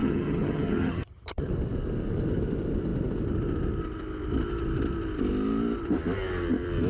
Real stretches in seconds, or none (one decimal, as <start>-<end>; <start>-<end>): 1.5-6.9